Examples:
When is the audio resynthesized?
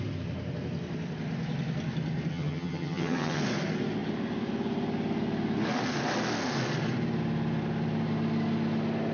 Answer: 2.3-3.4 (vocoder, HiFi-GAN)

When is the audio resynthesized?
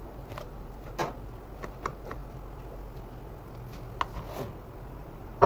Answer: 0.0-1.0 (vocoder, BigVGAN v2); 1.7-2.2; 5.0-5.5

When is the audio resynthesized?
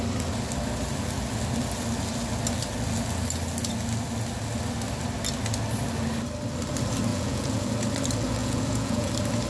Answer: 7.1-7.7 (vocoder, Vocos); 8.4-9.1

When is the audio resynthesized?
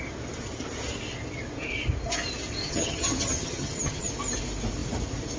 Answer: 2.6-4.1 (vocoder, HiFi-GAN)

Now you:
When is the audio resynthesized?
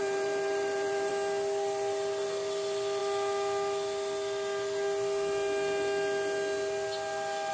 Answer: 0.0-1.1 (vocoder, BigVGAN v2)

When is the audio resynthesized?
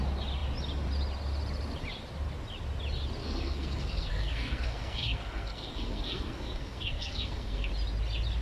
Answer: 3.2-7.7 (codec, SNAC)